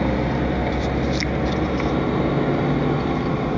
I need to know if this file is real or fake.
real